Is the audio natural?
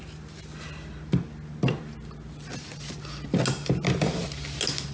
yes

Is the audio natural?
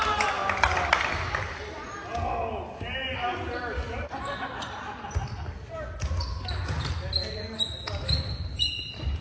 yes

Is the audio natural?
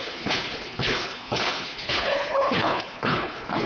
no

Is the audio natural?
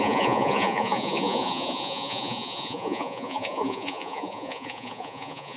no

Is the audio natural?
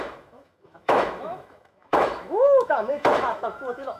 no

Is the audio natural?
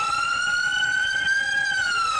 no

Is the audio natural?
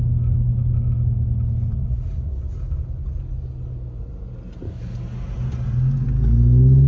yes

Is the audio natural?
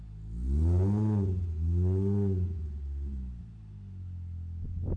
yes